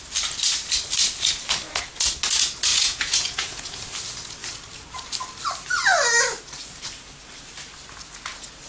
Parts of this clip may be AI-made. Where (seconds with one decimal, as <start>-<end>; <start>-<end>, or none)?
2.7-3.8